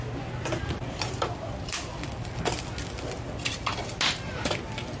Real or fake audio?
real